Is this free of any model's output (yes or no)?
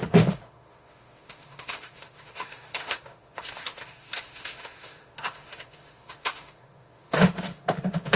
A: no